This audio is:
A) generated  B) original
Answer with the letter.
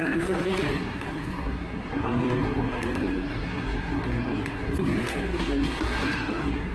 A